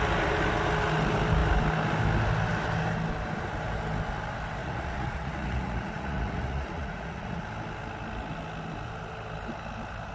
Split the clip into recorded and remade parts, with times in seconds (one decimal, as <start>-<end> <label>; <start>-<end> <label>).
0.0-4.6 recorded; 4.6-7.4 remade; 7.4-10.1 recorded